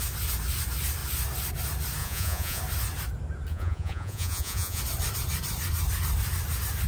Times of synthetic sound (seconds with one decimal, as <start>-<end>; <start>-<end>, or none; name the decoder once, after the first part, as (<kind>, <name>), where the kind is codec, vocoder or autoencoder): 2.0-2.6 (vocoder, Vocos); 3.5-4.8